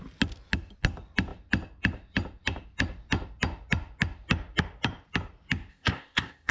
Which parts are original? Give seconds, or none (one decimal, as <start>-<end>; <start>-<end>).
0.0-5.7